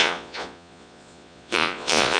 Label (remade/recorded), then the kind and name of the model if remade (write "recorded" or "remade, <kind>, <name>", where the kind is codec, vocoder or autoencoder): remade, vocoder, Vocos